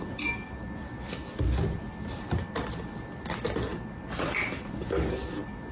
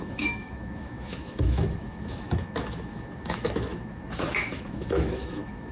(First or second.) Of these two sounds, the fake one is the second